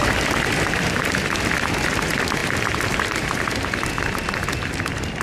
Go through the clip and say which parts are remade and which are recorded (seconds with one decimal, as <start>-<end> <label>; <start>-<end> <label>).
0.0-1.0 remade; 1.0-2.4 recorded; 2.4-4.0 remade; 4.0-5.2 recorded